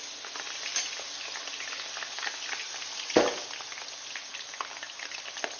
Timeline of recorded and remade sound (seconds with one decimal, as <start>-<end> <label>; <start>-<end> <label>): 0.0-5.6 recorded